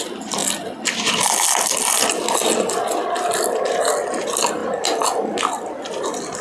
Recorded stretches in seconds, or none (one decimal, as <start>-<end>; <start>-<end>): 0.4-2.7